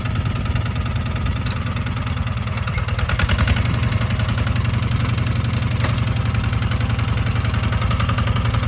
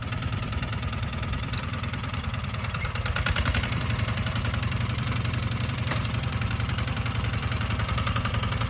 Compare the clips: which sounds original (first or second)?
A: first